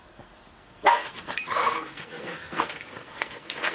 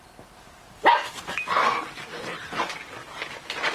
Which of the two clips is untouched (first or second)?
second